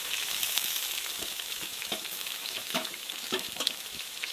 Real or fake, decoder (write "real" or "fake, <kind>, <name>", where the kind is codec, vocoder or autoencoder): fake, autoencoder, DAC-VAE